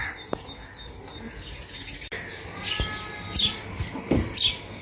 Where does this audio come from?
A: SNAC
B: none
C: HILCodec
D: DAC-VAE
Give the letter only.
B